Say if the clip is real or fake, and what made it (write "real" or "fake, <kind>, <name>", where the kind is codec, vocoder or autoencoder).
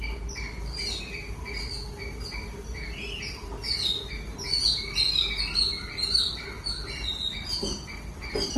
real